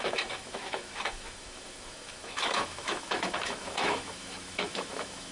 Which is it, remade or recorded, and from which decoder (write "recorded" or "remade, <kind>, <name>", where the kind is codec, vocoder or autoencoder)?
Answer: remade, autoencoder, DAC-VAE